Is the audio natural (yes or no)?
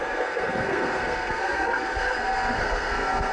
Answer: no